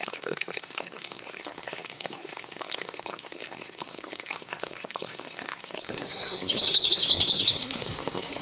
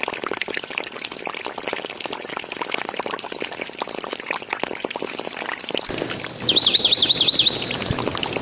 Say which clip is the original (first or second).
second